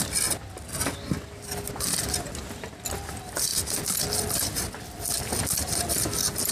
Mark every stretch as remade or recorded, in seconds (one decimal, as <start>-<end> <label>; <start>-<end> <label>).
0.0-6.5 recorded